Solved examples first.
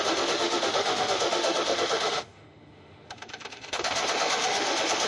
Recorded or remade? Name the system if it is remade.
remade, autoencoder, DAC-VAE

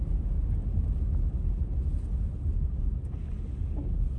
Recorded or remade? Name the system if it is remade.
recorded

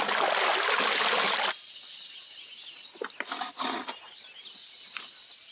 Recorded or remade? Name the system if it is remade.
recorded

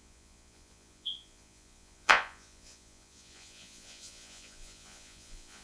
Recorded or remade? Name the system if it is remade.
remade, vocoder, Vocos